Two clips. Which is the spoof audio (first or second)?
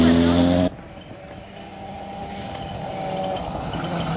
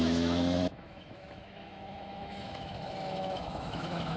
second